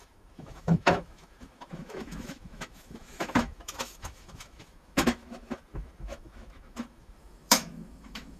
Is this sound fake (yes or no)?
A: yes